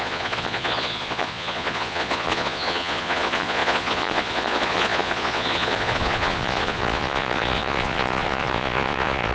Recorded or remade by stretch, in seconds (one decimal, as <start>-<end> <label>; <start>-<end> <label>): 0.0-9.3 remade

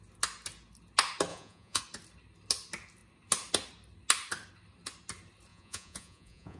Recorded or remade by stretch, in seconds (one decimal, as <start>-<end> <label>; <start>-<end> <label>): 0.0-1.3 recorded; 1.3-1.8 remade; 1.8-5.5 recorded; 5.5-6.6 remade

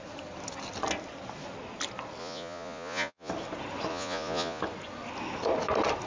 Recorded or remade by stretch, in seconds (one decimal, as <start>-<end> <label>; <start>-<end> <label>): 0.0-2.2 recorded; 2.2-3.3 remade; 3.3-3.9 recorded; 3.9-4.6 remade; 4.6-6.1 recorded

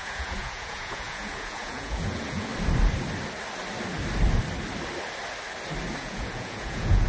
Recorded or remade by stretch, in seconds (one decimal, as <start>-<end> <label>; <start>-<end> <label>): 0.0-2.5 remade; 2.5-6.0 recorded; 6.0-7.1 remade

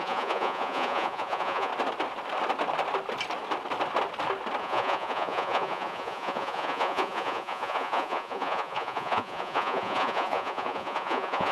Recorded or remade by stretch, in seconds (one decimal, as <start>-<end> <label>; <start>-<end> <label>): 0.0-1.7 remade; 1.7-4.6 recorded; 4.6-11.5 remade